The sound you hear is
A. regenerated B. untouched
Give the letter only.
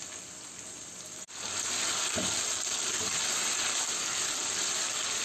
B